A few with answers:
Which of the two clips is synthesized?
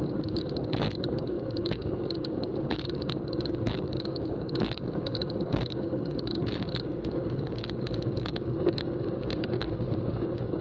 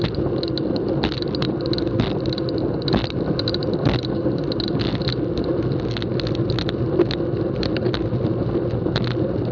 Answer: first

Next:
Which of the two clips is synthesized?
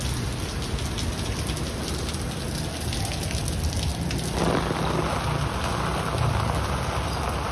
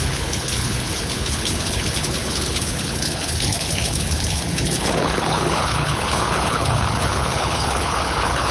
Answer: second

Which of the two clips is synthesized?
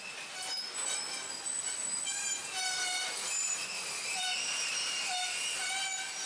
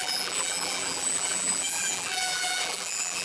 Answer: second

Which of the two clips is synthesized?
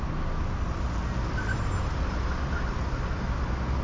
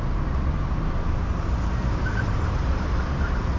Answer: second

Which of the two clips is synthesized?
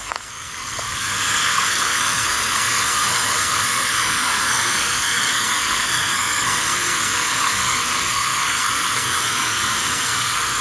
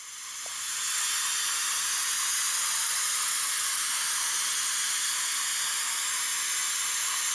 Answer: first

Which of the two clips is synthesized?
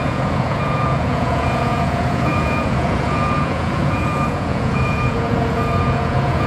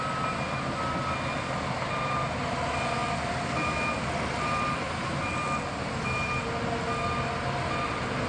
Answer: first